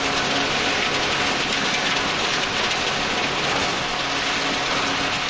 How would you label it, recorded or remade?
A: recorded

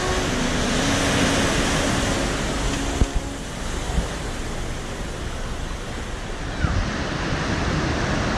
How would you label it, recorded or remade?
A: recorded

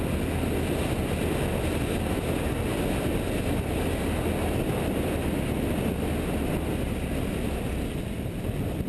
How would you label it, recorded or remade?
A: recorded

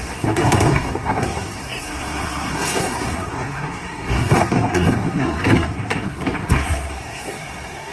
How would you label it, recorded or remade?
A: remade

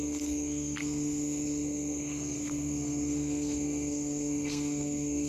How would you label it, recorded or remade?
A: remade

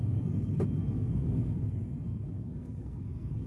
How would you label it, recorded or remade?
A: remade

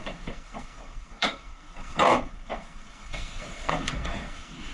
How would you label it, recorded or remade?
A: remade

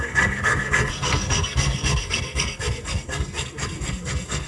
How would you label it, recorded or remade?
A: remade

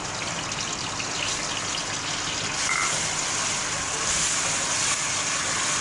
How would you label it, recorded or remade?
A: recorded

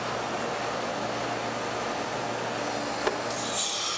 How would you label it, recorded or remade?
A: recorded